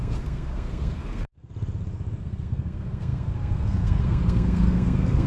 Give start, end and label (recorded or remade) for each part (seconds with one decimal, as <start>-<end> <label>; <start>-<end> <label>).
0.0-1.5 remade; 1.5-2.2 recorded; 2.2-5.3 remade